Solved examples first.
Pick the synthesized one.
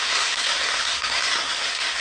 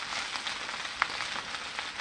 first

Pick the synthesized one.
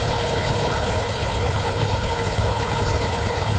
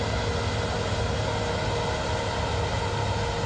first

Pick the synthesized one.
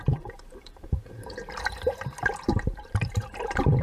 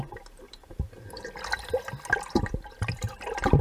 first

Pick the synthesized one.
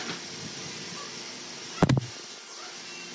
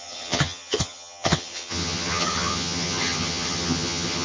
second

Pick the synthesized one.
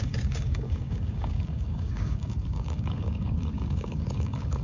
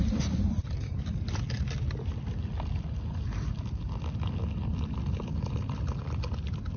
first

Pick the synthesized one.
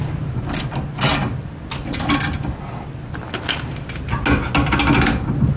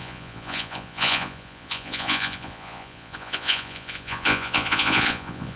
second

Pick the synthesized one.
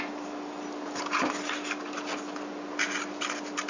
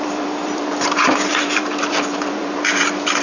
second